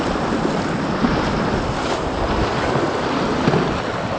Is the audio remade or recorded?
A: recorded